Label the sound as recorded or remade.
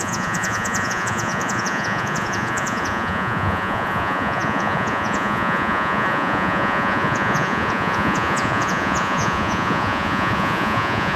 remade